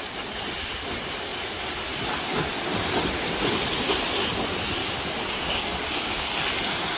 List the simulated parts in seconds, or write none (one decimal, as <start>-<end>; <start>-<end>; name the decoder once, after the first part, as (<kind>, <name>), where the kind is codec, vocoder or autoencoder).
4.8-6.3 (codec, DAC)